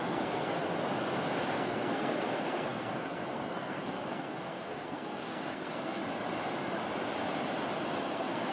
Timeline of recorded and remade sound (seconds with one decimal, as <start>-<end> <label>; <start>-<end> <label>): 0.0-0.6 remade; 0.6-1.5 recorded; 1.5-6.0 remade; 6.0-8.0 recorded; 8.0-8.5 remade